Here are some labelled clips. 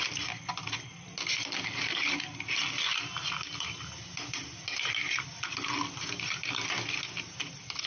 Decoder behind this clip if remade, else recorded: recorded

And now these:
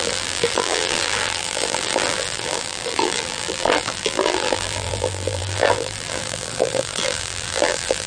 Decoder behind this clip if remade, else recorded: remade, vocoder, BigVGAN v2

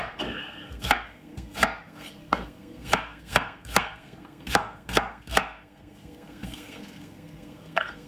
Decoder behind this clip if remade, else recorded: remade, codec, SNAC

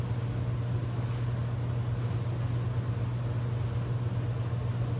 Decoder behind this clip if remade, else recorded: recorded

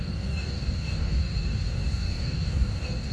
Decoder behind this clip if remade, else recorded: remade, codec, DAC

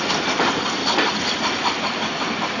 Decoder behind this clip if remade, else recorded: recorded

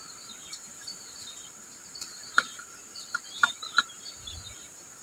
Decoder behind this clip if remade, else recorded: remade, vocoder, BigVGAN v2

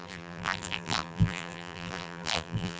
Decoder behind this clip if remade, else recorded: remade, vocoder, BigVGAN v2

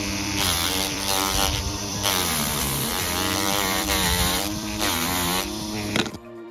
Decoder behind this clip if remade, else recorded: remade, vocoder, BigVGAN v2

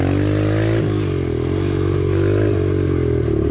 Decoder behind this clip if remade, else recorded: recorded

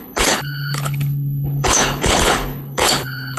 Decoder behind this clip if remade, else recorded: remade, codec, HILCodec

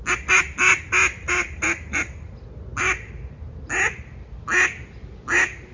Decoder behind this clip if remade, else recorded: recorded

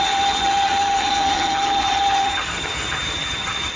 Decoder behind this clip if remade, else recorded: remade, vocoder, HiFi-GAN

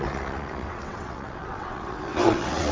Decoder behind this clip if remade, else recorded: remade, vocoder, WaveNeXt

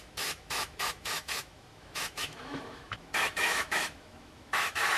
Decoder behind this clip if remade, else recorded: remade, autoencoder, DAC-VAE